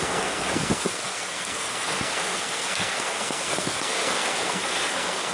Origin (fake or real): fake